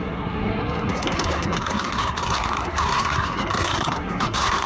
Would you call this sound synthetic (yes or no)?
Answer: yes